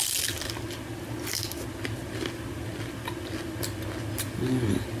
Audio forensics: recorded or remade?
recorded